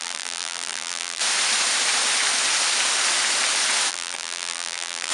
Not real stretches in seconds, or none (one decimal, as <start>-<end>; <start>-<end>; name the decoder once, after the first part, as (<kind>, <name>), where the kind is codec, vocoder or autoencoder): 0.0-1.2 (vocoder, BigVGAN v2); 3.9-5.1